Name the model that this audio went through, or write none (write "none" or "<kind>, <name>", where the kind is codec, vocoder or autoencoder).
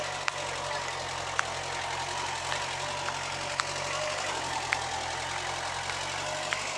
none